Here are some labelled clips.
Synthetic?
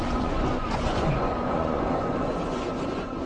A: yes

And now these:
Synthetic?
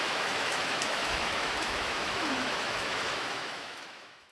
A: yes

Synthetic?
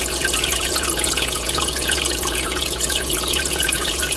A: yes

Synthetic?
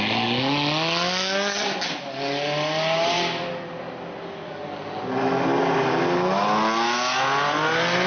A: no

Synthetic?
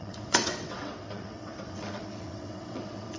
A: yes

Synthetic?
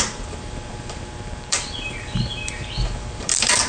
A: yes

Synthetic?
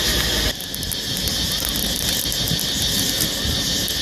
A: no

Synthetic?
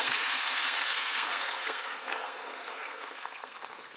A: yes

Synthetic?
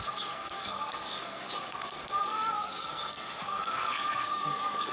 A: yes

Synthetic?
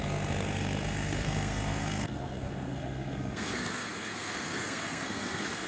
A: yes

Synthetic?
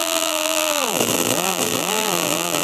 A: yes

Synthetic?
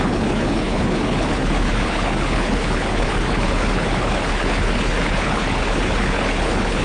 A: yes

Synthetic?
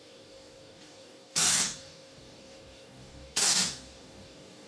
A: yes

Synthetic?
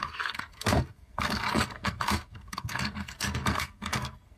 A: yes